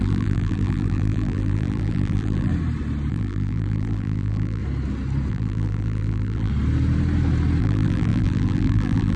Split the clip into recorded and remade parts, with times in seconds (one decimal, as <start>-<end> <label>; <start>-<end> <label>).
0.0-2.5 remade; 2.5-3.1 recorded; 3.1-4.6 remade; 4.6-5.3 recorded; 5.3-6.5 remade; 6.5-7.6 recorded; 7.6-9.2 remade